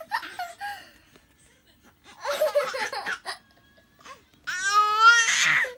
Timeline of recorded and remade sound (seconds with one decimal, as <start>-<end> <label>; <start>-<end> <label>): 0.0-5.8 recorded

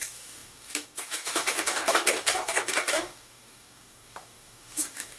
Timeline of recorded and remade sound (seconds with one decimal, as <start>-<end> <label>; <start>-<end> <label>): 0.0-5.2 remade

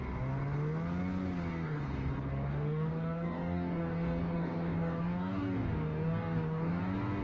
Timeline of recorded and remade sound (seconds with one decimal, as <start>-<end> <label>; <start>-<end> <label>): 0.0-1.5 recorded; 1.5-2.1 remade; 2.1-2.5 recorded; 2.5-6.8 remade; 6.8-7.2 recorded

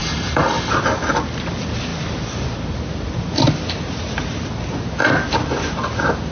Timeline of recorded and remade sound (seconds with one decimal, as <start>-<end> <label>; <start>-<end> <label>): 0.0-0.7 remade; 0.7-6.3 recorded

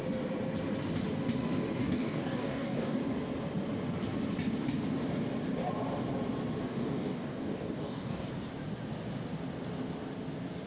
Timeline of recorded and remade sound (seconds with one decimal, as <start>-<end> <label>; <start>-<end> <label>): 0.0-1.8 recorded; 1.8-3.0 remade; 3.0-6.6 recorded; 6.6-8.3 remade; 8.3-10.7 recorded

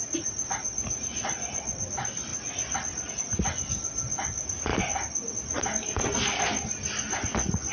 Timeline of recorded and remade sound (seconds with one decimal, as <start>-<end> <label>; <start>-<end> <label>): 0.0-7.7 recorded

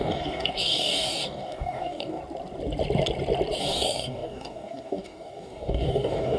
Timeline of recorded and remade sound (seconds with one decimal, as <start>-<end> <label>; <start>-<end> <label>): 0.0-2.2 remade; 2.2-3.6 recorded; 3.6-6.4 remade

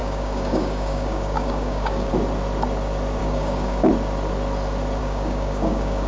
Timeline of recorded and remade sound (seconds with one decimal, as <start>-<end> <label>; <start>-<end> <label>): 0.0-2.1 remade; 2.1-3.2 recorded; 3.2-3.9 remade; 3.9-5.0 recorded; 5.0-6.1 remade